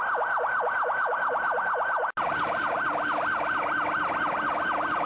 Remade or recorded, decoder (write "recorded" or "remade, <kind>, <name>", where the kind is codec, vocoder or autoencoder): recorded